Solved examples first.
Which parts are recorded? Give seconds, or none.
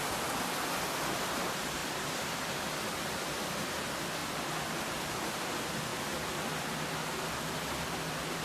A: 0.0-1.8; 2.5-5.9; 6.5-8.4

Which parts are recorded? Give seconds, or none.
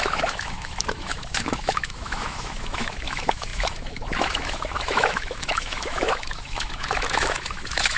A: none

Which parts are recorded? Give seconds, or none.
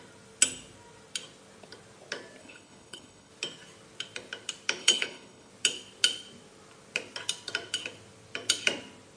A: 0.0-2.4; 3.3-4.8; 5.5-9.2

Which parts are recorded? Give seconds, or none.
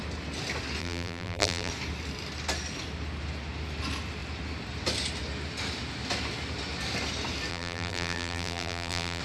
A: 0.0-0.8; 1.7-7.5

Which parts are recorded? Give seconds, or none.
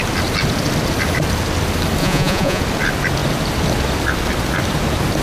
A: 0.0-2.0; 2.6-5.2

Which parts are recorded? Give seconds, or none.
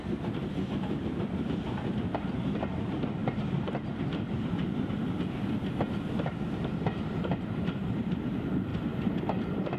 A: 3.2-5.8; 8.7-9.2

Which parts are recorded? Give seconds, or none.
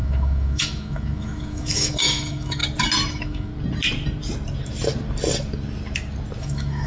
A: 2.6-3.1; 3.5-6.4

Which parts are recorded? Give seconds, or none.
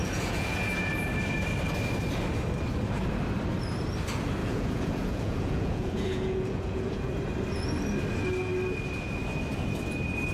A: 0.9-4.4; 7.1-10.3